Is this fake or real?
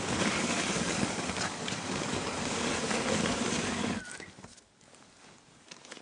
fake